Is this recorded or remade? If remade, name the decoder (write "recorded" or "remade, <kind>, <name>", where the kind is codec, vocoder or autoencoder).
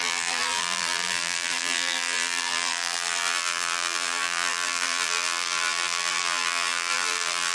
remade, vocoder, BigVGAN v2